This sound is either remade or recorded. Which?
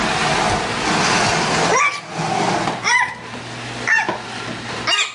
recorded